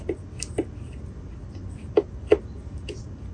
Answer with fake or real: real